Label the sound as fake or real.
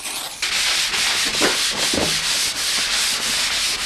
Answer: real